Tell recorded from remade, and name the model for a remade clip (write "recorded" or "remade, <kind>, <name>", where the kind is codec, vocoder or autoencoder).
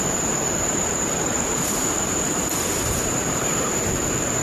remade, vocoder, BigVGAN v2